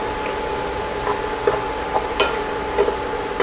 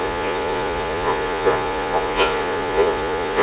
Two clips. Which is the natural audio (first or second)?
first